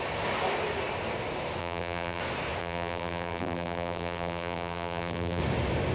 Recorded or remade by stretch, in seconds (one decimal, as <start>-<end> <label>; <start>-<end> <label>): 0.0-1.6 recorded; 1.6-2.2 remade; 2.2-2.6 recorded; 2.6-5.4 remade; 5.4-5.9 recorded